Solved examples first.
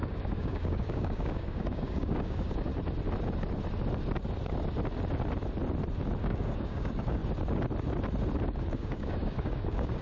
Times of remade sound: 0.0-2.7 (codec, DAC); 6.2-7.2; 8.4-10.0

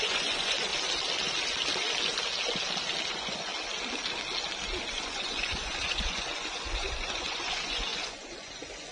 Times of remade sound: 0.0-0.7 (vocoder, Vocos); 3.1-3.5; 4.9-8.9

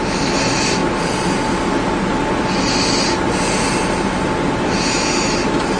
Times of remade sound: none

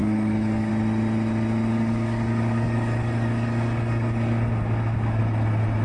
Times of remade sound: 0.0-0.7 (codec, DAC); 1.7-5.2

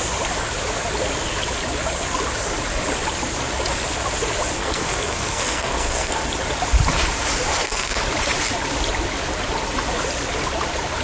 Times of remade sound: 4.6-6.3 (codec, SNAC); 7.5-8.0

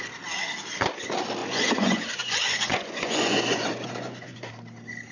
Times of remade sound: 1.4-4.5 (vocoder, Vocos)

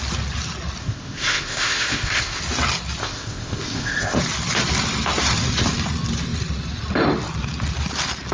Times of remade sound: 0.8-2.4 (codec, ZipCodec); 3.0-4.2